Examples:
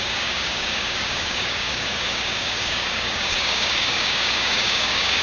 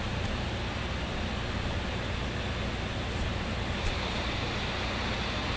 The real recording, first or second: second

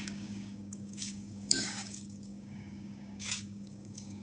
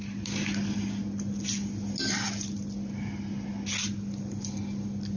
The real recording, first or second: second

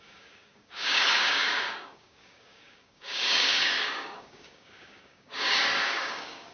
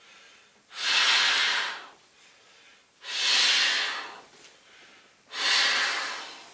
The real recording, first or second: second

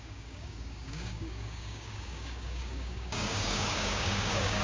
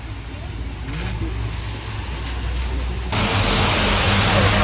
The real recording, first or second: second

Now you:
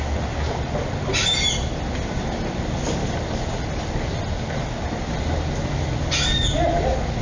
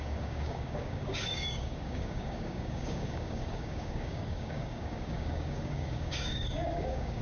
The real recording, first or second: first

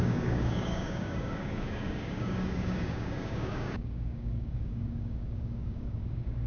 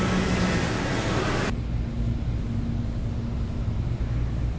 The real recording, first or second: second